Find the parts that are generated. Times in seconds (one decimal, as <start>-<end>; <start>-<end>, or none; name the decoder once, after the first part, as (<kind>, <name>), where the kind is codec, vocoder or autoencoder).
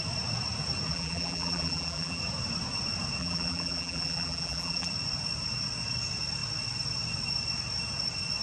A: 0.9-2.2 (vocoder, BigVGAN v2); 3.2-4.9